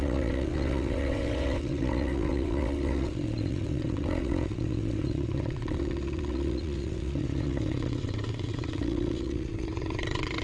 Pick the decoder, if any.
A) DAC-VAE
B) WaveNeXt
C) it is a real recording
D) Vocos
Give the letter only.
B